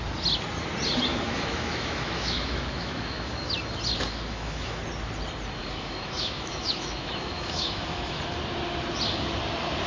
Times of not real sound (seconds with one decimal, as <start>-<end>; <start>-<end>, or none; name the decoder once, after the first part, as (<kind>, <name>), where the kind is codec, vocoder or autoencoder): 1.1-3.5 (autoencoder, DAC-VAE); 4.1-4.8; 5.6-8.2